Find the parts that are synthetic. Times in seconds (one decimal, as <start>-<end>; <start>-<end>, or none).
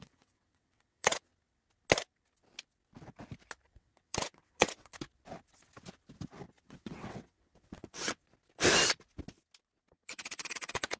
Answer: 0.0-1.3; 3.7-4.9; 6.6-8.2; 9.9-11.0